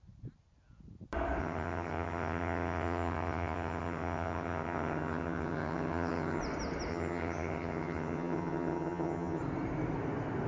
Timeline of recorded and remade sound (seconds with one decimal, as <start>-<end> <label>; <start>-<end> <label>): 0.0-1.4 recorded; 1.4-6.4 remade; 6.4-6.9 recorded; 6.9-9.4 remade; 9.4-10.5 recorded